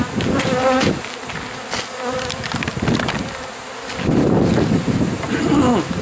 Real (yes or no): yes